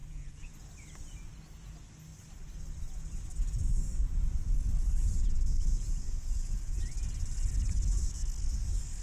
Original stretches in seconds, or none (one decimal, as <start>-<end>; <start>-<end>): 0.5-5.7; 6.8-9.0